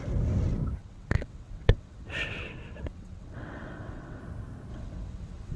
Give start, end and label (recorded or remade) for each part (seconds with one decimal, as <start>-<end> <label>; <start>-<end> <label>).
0.0-0.8 recorded; 0.8-4.2 remade; 4.2-4.7 recorded; 4.7-5.6 remade